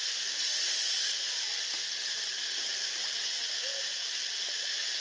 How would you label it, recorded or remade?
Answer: recorded